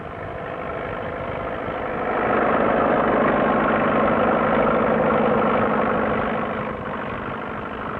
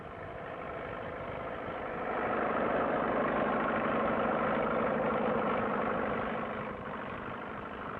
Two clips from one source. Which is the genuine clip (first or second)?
first